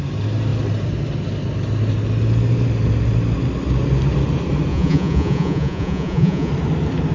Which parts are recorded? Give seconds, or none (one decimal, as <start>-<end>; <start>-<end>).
0.0-4.7; 6.5-7.1